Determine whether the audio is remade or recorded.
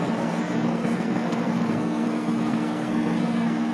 remade